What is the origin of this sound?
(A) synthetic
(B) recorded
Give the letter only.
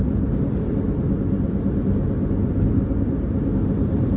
B